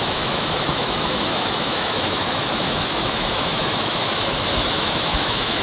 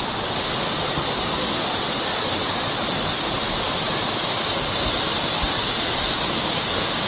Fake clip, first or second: first